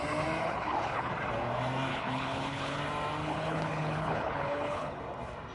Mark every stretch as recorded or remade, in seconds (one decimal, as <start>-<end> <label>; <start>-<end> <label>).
0.0-0.4 recorded; 0.4-1.1 remade; 1.1-1.9 recorded; 1.9-2.8 remade; 2.8-3.2 recorded; 3.2-5.0 remade; 5.0-5.5 recorded